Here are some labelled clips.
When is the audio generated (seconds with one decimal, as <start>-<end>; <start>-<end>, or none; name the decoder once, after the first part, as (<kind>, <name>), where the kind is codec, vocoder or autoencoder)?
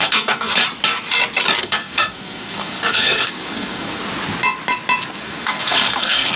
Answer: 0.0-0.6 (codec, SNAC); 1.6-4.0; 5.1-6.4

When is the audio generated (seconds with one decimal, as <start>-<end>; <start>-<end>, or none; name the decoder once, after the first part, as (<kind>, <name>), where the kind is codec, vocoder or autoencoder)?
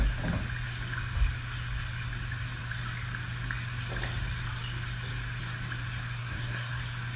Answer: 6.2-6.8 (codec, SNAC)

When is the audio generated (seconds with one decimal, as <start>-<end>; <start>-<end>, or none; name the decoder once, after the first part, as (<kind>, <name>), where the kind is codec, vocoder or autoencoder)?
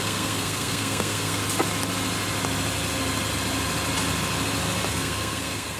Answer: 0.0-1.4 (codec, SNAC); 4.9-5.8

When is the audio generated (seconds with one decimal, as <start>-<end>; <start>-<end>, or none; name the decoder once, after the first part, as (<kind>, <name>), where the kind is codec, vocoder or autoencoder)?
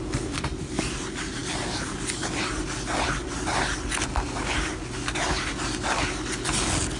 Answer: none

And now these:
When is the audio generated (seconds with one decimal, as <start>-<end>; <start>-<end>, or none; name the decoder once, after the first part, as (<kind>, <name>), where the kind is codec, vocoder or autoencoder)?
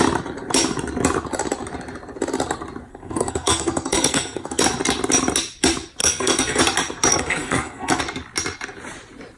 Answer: 2.9-4.6 (codec, SNAC); 6.0-6.6; 7.1-8.0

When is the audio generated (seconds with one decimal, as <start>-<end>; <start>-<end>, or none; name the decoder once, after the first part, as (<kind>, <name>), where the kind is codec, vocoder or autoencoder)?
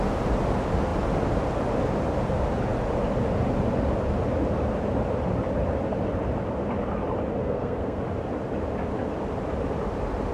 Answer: 7.4-8.0 (codec, SNAC)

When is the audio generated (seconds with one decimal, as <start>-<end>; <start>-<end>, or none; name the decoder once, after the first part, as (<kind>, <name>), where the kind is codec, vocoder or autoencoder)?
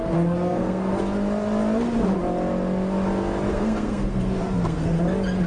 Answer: 0.0-1.0 (codec, SNAC); 3.5-5.0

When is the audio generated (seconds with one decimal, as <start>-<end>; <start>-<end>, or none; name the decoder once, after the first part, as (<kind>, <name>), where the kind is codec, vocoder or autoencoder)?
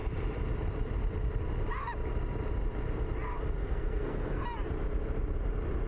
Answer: 3.6-4.4 (codec, SNAC)